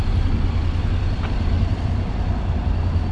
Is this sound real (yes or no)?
yes